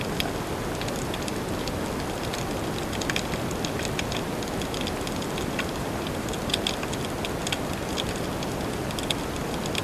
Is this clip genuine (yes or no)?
yes